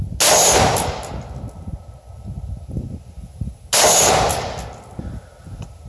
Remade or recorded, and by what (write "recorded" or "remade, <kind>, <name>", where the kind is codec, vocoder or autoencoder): recorded